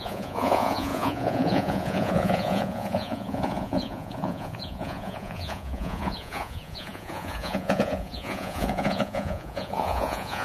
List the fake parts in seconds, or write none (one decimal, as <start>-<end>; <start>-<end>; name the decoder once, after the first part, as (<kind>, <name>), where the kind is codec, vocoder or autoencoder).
0.0-10.4 (vocoder, Vocos)